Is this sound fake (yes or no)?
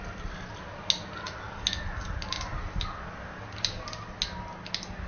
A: no